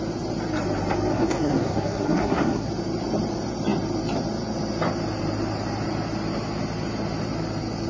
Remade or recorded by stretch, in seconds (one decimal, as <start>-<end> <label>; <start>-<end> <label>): 0.0-1.1 recorded; 1.1-2.7 remade; 2.7-7.9 recorded